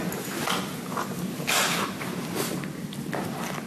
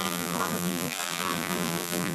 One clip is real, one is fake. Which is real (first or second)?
first